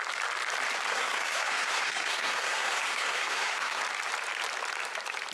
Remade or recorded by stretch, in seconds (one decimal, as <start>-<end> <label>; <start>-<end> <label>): 0.0-0.9 recorded; 0.9-3.8 remade; 3.8-5.3 recorded